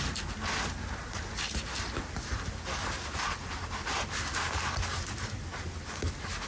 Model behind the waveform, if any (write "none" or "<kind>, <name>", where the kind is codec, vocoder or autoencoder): none